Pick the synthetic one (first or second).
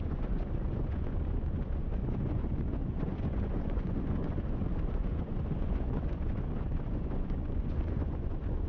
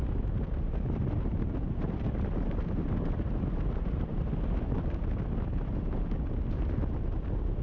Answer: first